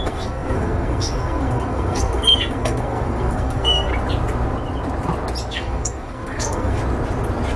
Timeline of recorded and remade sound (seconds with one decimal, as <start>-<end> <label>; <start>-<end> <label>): 0.0-3.9 remade; 3.9-5.5 recorded; 5.5-6.8 remade; 6.8-7.6 recorded